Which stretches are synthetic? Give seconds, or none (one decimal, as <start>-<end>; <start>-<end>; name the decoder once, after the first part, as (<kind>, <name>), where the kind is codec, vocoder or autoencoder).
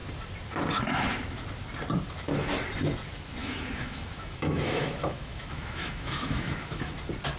3.4-6.9 (autoencoder, DAC-VAE)